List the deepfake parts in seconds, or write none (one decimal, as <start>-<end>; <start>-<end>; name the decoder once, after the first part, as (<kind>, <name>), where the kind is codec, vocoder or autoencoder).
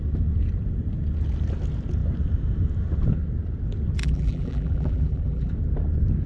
4.0-5.5 (vocoder, BigVGAN v2)